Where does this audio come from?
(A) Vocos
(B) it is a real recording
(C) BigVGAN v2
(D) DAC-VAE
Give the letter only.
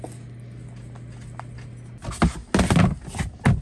B